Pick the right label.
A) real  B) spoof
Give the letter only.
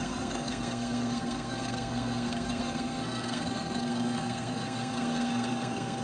B